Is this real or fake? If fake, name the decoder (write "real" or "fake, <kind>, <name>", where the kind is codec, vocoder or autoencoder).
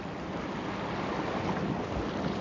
real